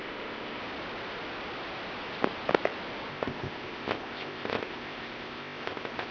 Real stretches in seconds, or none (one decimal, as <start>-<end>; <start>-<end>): 0.6-3.1